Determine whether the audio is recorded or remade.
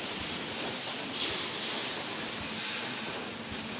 recorded